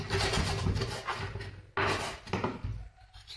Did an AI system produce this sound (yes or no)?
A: no